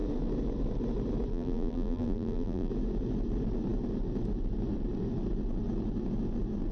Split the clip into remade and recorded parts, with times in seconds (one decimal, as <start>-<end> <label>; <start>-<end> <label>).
0.0-1.3 recorded; 1.3-2.7 remade; 2.7-6.7 recorded